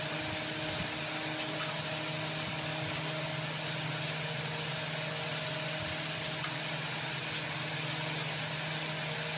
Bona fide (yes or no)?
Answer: yes